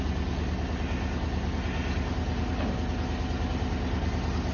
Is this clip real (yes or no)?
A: yes